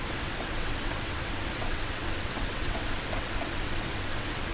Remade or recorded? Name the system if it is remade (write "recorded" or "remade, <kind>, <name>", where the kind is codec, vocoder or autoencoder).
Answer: remade, vocoder, WaveNeXt